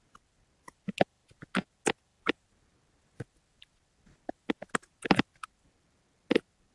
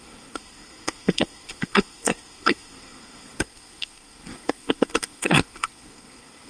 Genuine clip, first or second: first